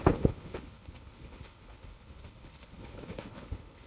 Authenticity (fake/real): fake